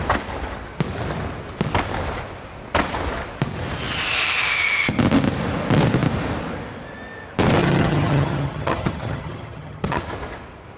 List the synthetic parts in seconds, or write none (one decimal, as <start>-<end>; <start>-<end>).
7.6-10.0